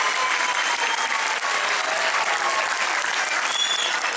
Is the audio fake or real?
real